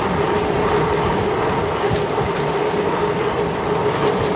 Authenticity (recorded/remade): recorded